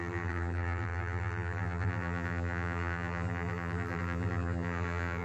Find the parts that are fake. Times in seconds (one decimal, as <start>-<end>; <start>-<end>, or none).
0.0-5.2